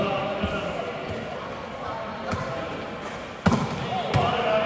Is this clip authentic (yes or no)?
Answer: yes